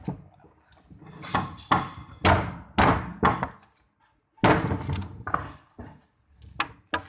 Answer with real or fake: real